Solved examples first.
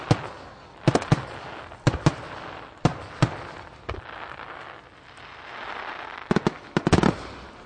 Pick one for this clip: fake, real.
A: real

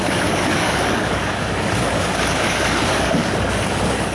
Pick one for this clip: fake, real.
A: fake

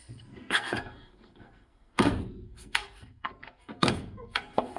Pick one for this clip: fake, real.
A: fake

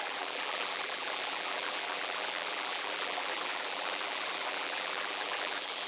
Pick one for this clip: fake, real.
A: fake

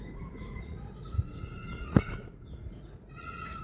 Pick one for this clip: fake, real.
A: fake